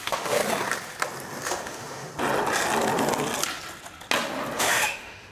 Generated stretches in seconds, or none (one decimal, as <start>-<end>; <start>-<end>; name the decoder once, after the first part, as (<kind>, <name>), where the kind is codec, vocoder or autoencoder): 0.0-0.4 (autoencoder, DAC-VAE); 1.5-2.1; 4.6-5.3